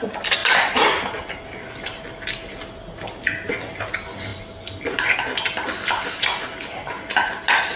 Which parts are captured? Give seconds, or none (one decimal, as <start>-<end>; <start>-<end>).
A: 0.0-7.8